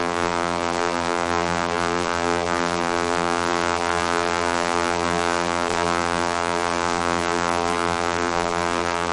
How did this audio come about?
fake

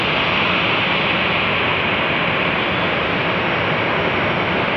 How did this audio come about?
real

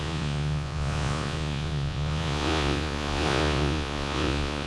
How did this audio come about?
fake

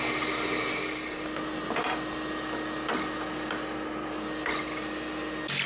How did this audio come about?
real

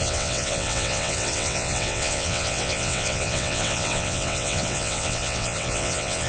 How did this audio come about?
fake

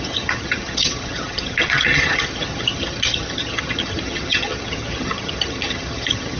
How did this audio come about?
fake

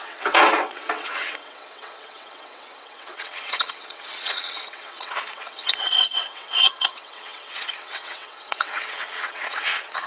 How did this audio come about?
fake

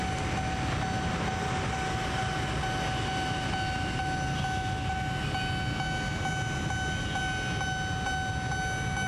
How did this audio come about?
real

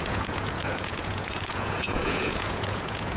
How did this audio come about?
fake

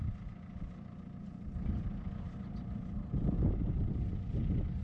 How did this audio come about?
real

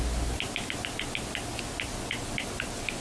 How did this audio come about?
real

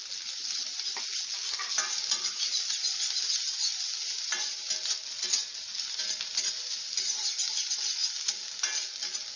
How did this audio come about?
real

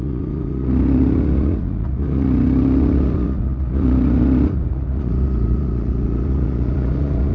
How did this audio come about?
fake